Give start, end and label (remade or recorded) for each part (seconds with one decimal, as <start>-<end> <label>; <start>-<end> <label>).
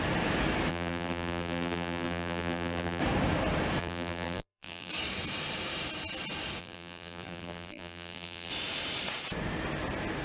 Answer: 0.0-0.7 recorded; 0.7-3.0 remade; 3.0-3.8 recorded; 3.8-4.9 remade; 4.9-6.6 recorded; 6.6-8.5 remade; 8.5-10.2 recorded